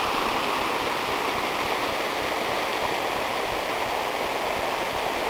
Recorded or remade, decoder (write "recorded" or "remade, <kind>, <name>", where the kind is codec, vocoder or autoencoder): recorded